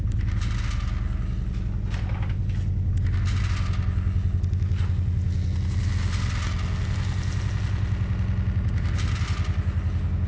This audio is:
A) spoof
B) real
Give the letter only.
B